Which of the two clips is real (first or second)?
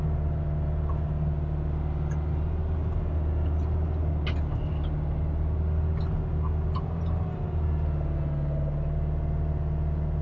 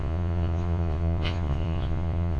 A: first